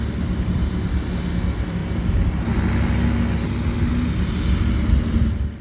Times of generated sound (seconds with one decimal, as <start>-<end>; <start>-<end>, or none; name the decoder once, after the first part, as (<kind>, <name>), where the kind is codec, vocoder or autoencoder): none